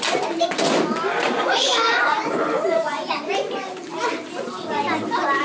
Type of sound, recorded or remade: recorded